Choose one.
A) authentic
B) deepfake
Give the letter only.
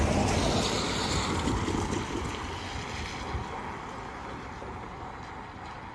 A